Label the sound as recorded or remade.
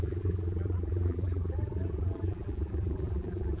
remade